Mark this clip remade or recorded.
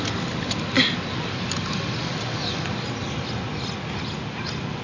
recorded